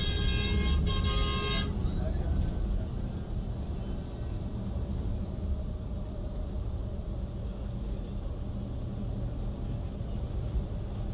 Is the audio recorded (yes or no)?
yes